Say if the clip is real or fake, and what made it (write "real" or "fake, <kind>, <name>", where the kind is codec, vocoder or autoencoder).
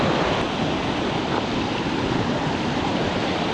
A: real